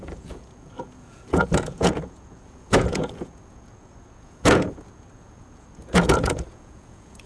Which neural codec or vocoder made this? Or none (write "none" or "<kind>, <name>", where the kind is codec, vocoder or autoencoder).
vocoder, Vocos